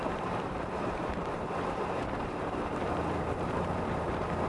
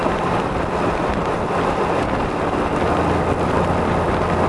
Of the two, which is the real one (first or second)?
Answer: second